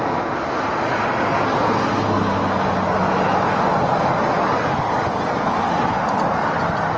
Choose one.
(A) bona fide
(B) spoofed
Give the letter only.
A